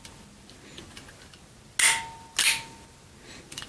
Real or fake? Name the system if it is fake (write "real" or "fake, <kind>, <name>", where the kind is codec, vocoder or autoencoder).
real